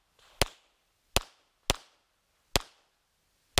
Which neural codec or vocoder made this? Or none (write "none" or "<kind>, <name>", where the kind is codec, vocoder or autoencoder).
none